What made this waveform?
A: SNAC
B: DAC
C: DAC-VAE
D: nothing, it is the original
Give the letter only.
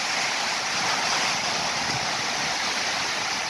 D